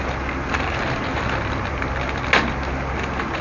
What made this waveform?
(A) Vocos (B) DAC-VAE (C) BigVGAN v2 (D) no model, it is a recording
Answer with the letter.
D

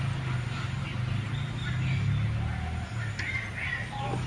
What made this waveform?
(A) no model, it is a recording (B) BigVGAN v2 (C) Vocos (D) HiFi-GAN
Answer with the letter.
A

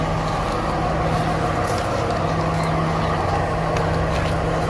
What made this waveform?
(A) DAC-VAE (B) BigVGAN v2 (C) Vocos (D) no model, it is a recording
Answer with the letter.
D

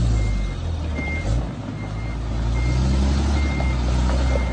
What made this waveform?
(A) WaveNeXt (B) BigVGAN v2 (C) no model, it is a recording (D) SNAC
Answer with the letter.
C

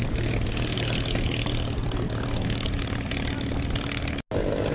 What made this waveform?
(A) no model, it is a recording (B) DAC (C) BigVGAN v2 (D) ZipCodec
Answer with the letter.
A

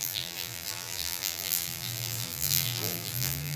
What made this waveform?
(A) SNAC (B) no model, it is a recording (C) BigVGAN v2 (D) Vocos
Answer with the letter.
C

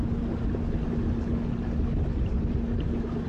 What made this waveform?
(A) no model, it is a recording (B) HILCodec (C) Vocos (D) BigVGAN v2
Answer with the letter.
A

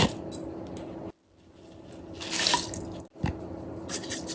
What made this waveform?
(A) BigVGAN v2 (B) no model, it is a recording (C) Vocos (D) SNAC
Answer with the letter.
B